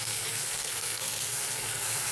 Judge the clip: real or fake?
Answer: fake